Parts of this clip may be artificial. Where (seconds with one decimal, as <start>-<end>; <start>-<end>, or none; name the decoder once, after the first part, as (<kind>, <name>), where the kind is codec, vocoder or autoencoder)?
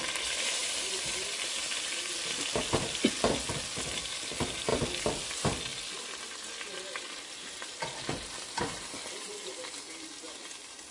none